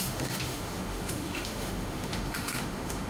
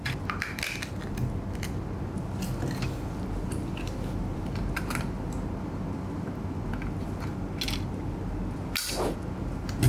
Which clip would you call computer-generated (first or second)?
first